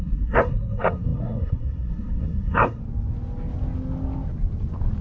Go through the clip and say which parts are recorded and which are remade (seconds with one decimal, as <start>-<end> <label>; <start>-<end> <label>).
0.0-2.8 remade; 2.8-5.0 recorded